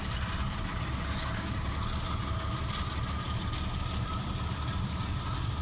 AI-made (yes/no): no